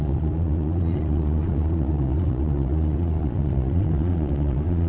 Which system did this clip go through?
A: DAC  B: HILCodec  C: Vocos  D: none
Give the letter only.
C